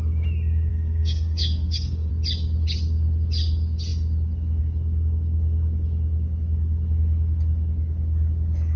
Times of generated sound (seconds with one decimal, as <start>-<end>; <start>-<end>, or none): 0.7-2.1